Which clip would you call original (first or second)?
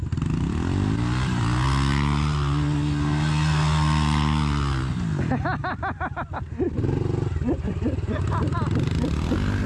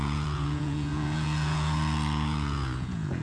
first